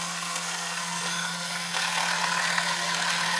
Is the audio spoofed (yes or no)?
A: yes